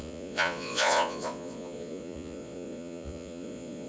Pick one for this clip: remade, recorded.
remade